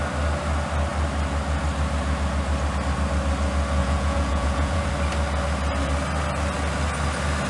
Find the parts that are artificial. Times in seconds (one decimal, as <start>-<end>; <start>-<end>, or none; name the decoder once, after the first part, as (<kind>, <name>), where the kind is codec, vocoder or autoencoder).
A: 3.8-4.9 (vocoder, Vocos)